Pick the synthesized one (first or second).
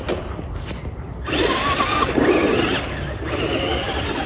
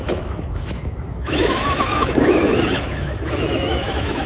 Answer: second